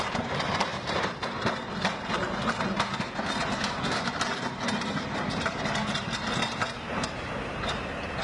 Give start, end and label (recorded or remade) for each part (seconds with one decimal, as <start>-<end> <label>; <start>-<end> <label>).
0.0-8.2 remade